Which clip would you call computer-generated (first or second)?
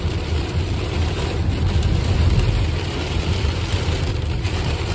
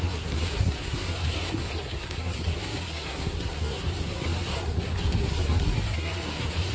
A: second